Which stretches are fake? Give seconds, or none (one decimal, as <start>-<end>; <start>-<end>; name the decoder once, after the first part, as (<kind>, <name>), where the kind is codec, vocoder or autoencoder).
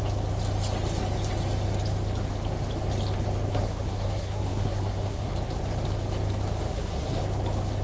3.5-5.3 (codec, SNAC); 6.7-7.2